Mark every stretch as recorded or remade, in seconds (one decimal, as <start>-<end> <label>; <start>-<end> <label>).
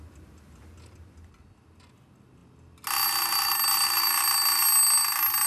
0.0-5.5 recorded